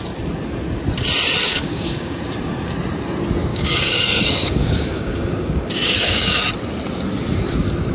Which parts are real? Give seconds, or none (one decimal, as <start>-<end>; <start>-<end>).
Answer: 0.0-1.5; 2.2-3.5; 6.4-7.9